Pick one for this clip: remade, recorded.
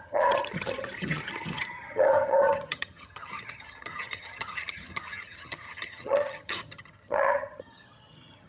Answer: remade